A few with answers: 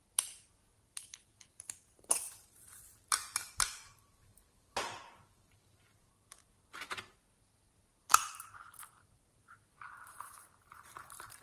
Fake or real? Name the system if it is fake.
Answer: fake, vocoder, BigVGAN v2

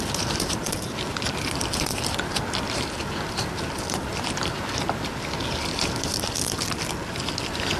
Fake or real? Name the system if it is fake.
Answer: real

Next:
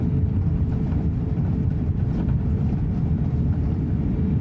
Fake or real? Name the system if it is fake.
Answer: fake, vocoder, BigVGAN v2